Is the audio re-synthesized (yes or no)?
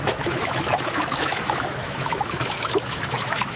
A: yes